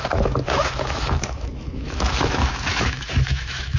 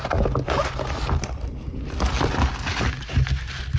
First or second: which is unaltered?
second